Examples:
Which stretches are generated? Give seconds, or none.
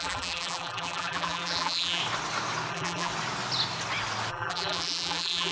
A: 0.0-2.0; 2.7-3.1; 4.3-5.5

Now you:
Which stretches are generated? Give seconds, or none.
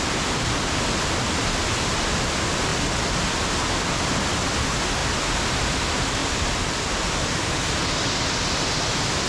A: none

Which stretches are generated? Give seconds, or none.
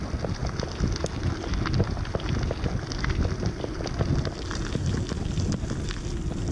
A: none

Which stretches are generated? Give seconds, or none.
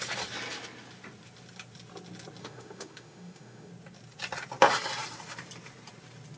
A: 2.4-3.7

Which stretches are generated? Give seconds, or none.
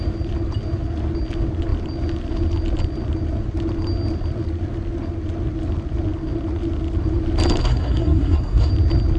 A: 7.6-8.7